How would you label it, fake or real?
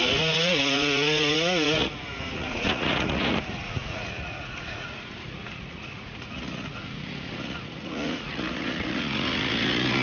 fake